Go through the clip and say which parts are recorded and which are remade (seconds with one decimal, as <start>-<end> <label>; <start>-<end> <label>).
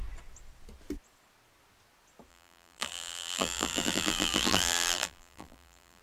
0.0-2.3 recorded; 2.3-6.0 remade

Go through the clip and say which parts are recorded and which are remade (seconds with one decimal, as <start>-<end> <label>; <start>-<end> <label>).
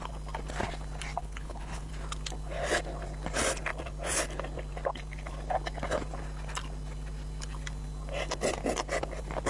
0.0-1.2 recorded; 1.2-1.9 remade; 1.9-9.5 recorded